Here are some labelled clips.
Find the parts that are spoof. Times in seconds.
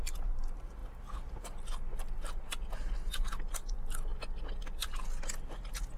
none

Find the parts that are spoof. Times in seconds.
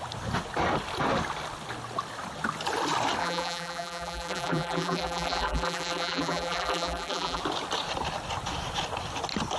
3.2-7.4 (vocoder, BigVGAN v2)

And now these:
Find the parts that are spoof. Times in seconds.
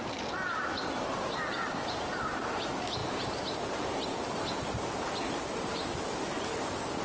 none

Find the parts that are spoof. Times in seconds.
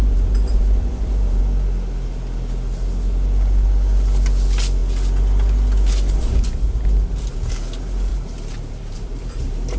0.0-1.4 (vocoder, BigVGAN v2); 8.1-9.4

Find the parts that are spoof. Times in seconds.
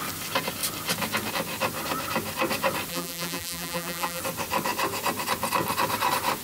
2.9-4.2 (vocoder, BigVGAN v2)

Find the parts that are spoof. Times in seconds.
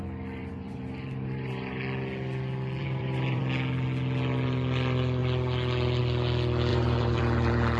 0.4-1.8 (vocoder, BigVGAN v2); 2.8-3.4; 6.7-7.8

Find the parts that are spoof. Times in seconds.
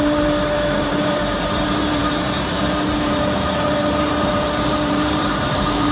0.0-5.9 (vocoder, BigVGAN v2)